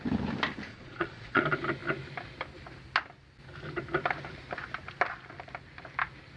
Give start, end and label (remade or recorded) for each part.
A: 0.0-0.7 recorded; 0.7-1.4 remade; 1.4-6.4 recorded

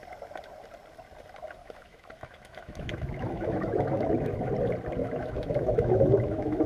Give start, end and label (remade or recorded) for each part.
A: 0.0-1.6 recorded; 1.6-4.5 remade; 4.5-5.0 recorded; 5.0-6.7 remade

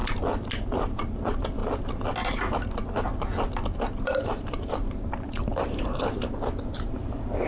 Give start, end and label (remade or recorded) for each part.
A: 0.0-0.7 recorded; 0.7-1.6 remade; 1.6-3.8 recorded; 3.8-6.2 remade; 6.2-6.7 recorded; 6.7-7.5 remade

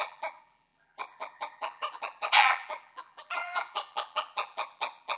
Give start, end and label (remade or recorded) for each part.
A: 0.0-5.2 remade

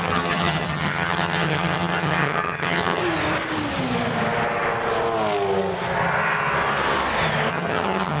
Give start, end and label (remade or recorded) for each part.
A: 0.0-3.0 remade; 3.0-7.5 recorded; 7.5-8.2 remade

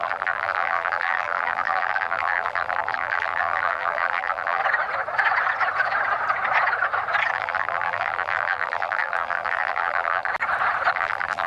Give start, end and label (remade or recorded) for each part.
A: 0.0-4.6 remade; 4.6-7.3 recorded; 7.3-10.3 remade; 10.3-10.9 recorded; 10.9-11.5 remade

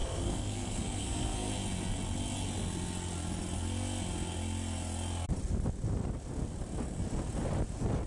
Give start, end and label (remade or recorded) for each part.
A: 0.0-1.5 remade; 1.5-8.1 recorded

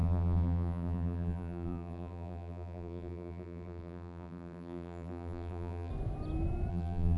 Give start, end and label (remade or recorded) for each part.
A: 0.0-5.9 remade; 5.9-6.7 recorded; 6.7-7.2 remade